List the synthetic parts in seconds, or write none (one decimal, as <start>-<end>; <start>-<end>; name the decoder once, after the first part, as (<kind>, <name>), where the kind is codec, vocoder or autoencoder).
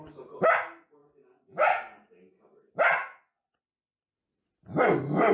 none